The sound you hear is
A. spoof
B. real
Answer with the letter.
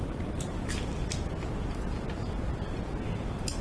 B